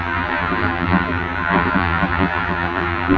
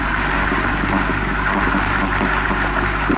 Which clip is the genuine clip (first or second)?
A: second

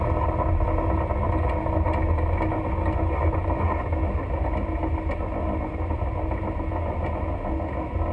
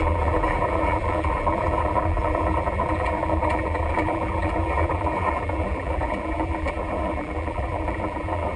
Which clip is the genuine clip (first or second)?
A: first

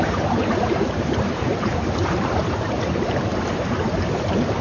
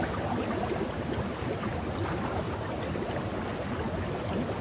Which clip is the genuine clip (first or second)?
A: second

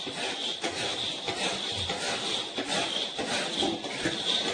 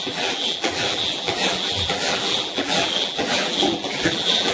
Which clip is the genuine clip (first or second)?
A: first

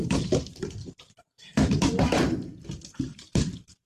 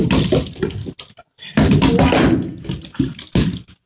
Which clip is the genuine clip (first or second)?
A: second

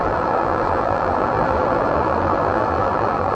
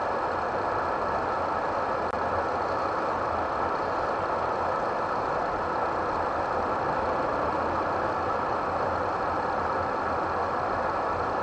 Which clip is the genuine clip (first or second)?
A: second